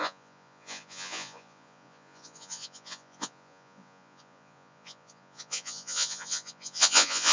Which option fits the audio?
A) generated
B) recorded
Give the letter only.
A